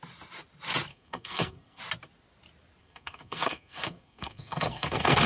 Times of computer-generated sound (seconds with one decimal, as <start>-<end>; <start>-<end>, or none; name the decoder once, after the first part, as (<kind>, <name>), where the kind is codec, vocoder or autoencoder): 0.9-1.8 (codec, SNAC); 2.8-5.3